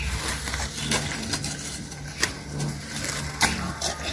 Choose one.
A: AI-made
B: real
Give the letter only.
B